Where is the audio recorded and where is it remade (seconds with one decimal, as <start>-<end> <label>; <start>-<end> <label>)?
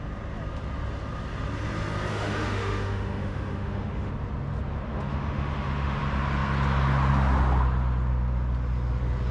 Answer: 0.0-2.1 recorded; 2.1-4.1 remade; 4.1-4.9 recorded; 4.9-6.0 remade; 6.0-9.3 recorded